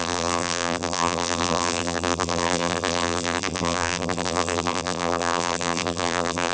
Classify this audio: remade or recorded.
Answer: remade